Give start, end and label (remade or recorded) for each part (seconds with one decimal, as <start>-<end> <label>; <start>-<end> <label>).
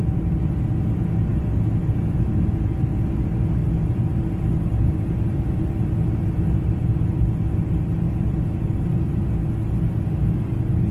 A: 0.0-10.9 recorded